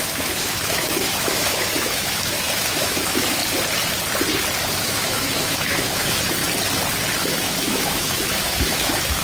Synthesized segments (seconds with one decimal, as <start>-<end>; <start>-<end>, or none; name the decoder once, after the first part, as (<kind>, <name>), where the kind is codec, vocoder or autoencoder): 0.0-3.4 (autoencoder, DAC-VAE); 4.8-6.4; 7.2-9.2